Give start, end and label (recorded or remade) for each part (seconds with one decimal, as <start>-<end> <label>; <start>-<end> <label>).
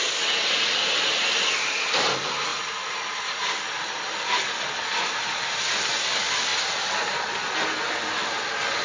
0.0-2.5 recorded; 2.5-3.3 remade; 3.3-6.5 recorded; 6.5-7.4 remade; 7.4-8.8 recorded